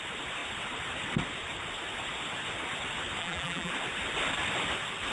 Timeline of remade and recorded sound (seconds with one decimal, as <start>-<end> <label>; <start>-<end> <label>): 0.0-3.2 recorded; 3.2-3.7 remade; 3.7-5.1 recorded